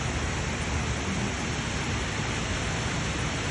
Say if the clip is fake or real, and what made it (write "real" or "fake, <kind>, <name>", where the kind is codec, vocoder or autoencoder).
real